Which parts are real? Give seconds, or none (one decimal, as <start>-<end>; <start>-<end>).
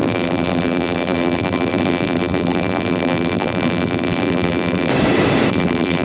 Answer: 4.9-5.5